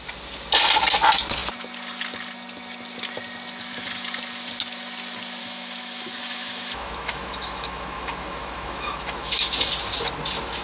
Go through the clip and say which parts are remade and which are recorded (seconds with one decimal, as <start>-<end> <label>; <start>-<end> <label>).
0.0-5.4 recorded; 5.4-9.7 remade; 9.7-10.6 recorded